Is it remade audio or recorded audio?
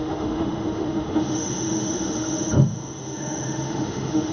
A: remade